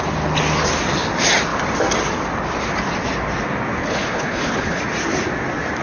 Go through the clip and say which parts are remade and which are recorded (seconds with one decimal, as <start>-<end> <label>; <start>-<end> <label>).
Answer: 0.0-3.8 recorded; 3.8-4.8 remade; 4.8-5.8 recorded